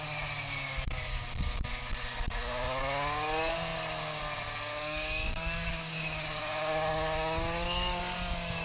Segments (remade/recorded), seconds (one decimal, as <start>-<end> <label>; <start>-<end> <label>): 0.0-1.1 recorded; 1.1-1.7 remade; 1.7-4.7 recorded; 4.7-8.0 remade; 8.0-8.6 recorded